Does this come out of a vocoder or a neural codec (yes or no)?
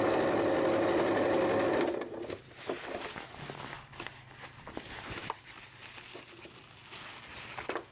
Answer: no